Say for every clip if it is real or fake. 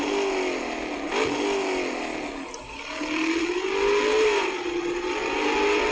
real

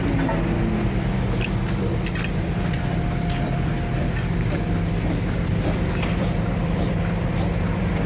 real